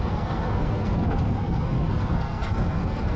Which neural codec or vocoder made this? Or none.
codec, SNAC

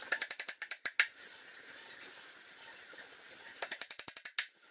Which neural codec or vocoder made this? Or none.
none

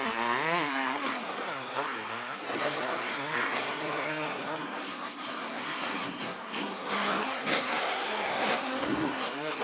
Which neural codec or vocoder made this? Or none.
codec, SNAC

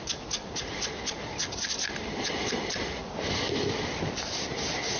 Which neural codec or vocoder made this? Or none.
none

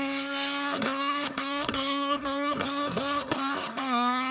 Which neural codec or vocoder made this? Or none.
codec, SNAC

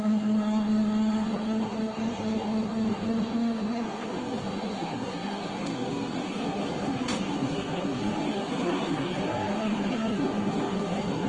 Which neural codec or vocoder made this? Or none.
codec, SNAC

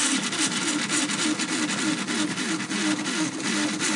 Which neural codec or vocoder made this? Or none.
none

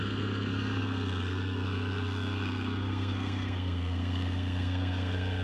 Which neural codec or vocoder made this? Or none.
codec, SNAC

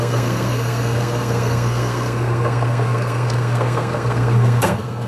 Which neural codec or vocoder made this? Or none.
codec, SNAC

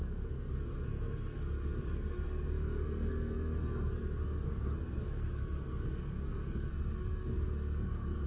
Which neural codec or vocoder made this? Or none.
codec, SNAC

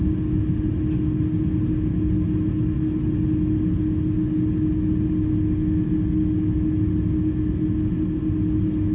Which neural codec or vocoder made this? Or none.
none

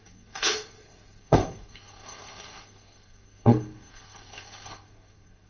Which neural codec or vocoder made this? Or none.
codec, SNAC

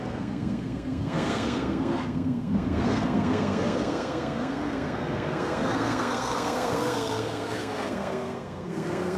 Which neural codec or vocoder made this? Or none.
codec, SNAC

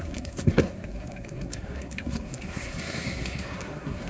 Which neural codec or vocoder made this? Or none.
codec, SNAC